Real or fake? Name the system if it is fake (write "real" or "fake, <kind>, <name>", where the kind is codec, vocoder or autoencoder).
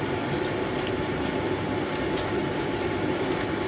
fake, vocoder, BigVGAN v2